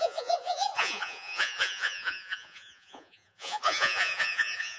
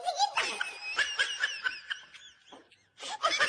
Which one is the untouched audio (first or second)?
second